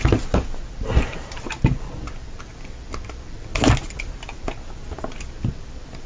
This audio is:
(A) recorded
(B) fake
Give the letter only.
A